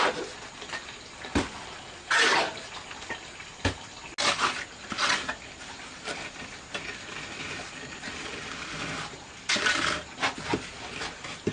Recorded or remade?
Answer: recorded